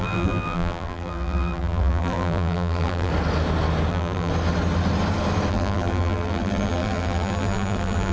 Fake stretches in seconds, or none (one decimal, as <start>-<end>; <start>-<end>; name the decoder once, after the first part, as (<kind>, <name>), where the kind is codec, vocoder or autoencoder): 0.0-3.1 (vocoder, BigVGAN v2); 3.9-4.3; 5.5-8.1